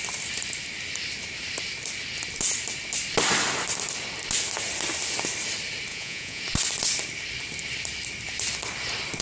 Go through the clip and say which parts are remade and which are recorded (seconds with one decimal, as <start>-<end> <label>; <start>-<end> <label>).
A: 0.0-5.9 recorded; 5.9-6.4 remade; 6.4-9.2 recorded